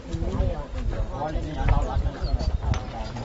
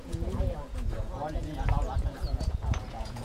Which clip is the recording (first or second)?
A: first